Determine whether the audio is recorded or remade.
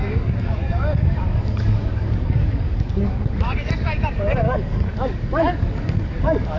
remade